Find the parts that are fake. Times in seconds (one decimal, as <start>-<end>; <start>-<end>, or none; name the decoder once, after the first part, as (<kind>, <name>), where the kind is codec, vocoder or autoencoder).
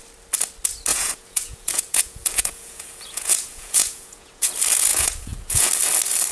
0.9-4.5 (vocoder, Vocos); 4.9-5.7